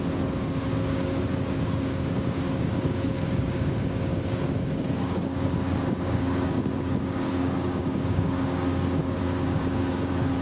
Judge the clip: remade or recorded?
remade